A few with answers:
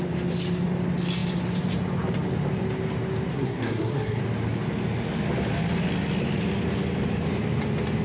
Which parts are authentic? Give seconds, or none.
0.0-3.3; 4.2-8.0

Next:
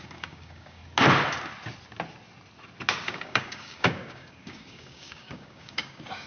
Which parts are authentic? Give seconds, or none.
0.8-3.1